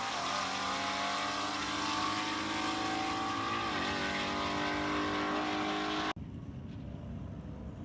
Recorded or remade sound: recorded